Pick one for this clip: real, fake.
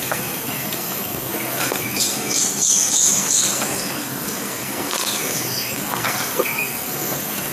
fake